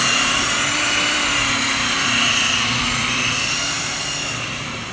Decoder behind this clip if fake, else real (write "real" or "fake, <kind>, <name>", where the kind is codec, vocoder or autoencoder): fake, vocoder, BigVGAN v2